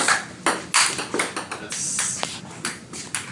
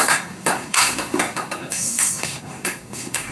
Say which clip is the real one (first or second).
first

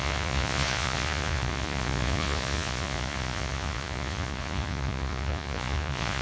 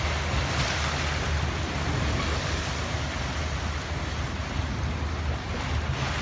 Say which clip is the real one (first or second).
second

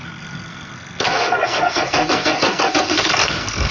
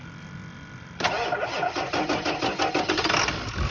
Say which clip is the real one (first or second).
second